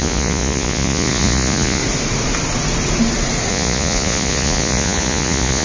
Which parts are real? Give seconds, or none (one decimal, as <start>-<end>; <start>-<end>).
1.8-3.5